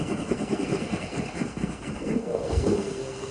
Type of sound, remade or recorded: remade